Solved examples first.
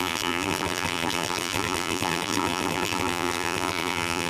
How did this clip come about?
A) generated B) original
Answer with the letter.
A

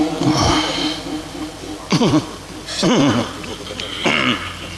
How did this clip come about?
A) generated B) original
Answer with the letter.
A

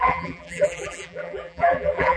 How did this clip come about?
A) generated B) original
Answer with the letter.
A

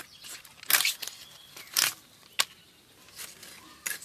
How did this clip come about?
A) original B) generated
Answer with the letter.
A